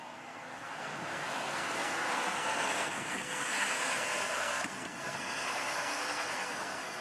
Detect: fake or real fake